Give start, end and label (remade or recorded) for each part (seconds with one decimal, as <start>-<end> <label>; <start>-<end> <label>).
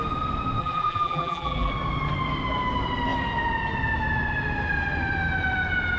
0.0-0.6 recorded; 0.6-1.7 remade; 1.7-6.0 recorded